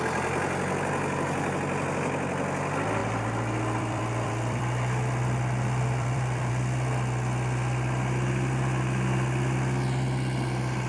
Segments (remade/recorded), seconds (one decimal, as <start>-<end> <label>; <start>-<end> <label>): 0.0-3.0 recorded; 3.0-6.5 remade; 6.5-10.9 recorded